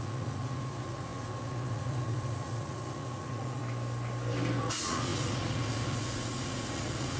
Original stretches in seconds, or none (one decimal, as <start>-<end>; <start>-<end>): 3.6-4.6